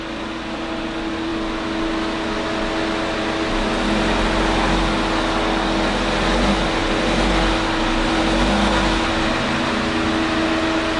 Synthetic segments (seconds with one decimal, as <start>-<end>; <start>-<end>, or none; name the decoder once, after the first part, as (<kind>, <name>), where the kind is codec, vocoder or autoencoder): none